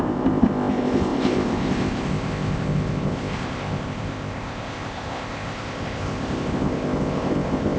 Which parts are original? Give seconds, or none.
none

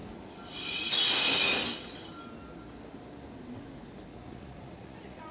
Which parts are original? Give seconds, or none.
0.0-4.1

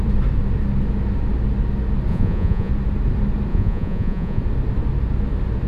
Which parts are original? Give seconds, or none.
0.0-2.1; 2.7-3.5; 4.4-5.7

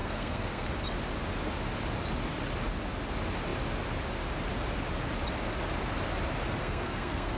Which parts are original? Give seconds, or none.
0.7-6.6

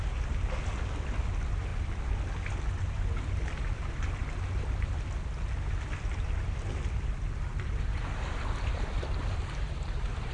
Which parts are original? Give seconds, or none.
0.0-7.5